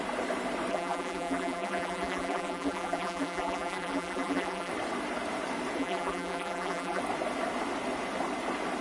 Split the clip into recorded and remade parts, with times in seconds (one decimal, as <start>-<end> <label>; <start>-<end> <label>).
0.0-0.7 recorded; 0.7-4.7 remade; 4.7-5.8 recorded; 5.8-7.0 remade; 7.0-8.8 recorded